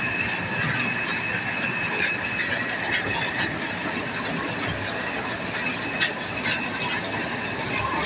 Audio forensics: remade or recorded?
recorded